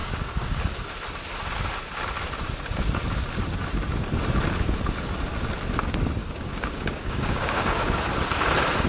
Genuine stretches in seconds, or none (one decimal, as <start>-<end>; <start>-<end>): 0.6-6.2; 8.0-8.9